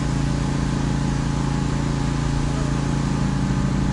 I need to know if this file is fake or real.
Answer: real